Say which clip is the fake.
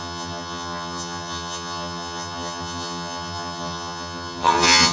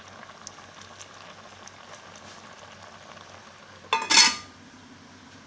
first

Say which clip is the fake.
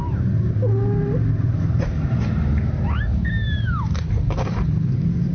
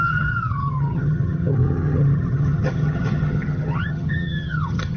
second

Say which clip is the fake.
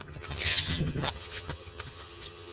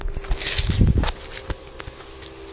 first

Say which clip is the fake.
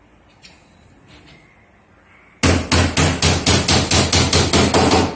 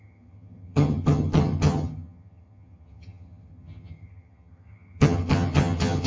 second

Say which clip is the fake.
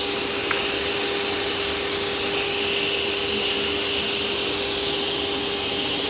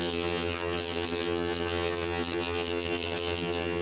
second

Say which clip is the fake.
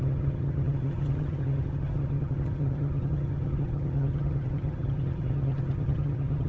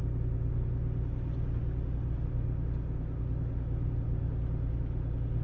first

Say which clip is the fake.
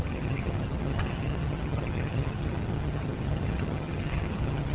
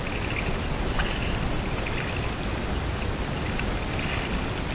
first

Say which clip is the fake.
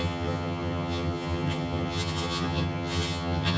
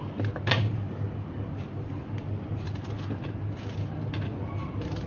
first